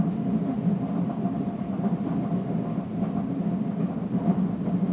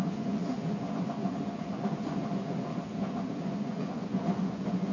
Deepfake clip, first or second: second